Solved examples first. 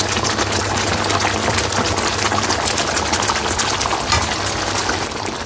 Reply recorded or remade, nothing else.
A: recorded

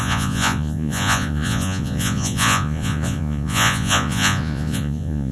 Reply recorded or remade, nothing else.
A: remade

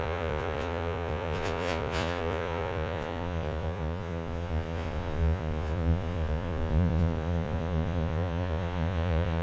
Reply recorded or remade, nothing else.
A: remade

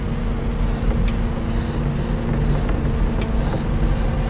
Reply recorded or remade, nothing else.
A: recorded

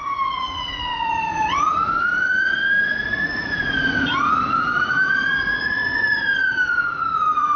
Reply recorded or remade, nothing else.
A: remade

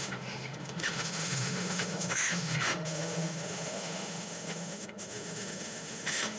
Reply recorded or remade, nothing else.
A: remade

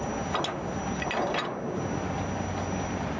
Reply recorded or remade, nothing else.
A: recorded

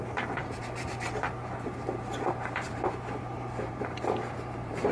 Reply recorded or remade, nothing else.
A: remade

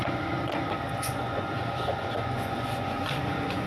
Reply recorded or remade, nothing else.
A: remade